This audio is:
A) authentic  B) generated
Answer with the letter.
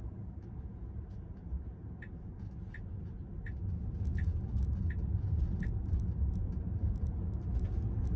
A